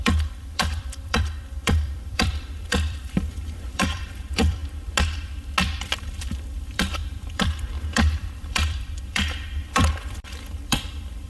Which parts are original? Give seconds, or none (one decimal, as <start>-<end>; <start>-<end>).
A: 4.6-5.6